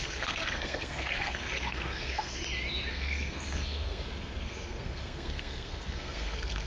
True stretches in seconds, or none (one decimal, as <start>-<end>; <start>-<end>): 2.4-2.9